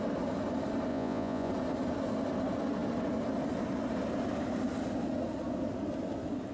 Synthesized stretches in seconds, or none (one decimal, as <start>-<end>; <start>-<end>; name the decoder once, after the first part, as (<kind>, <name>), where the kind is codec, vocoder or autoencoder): 0.9-1.5 (vocoder, Vocos)